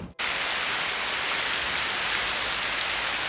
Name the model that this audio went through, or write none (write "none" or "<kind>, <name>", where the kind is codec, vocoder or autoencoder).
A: none